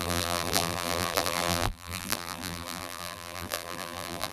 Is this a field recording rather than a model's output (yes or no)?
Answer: no